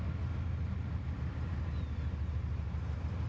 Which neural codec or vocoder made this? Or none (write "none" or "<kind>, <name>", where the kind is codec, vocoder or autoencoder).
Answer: none